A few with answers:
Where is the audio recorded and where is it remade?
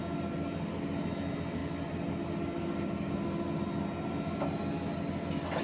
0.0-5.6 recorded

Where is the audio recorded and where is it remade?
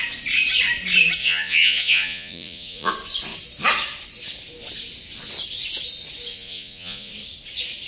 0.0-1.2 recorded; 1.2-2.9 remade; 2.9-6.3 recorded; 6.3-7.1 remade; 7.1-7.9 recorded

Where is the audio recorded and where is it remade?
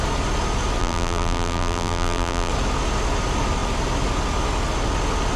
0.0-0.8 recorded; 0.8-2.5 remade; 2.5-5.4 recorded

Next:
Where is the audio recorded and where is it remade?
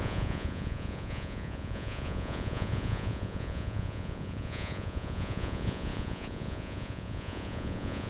0.0-8.1 remade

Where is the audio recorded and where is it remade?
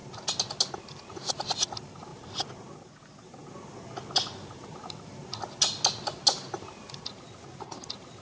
0.0-8.2 recorded